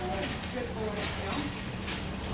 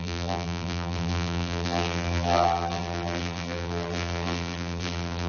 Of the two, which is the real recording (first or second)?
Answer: first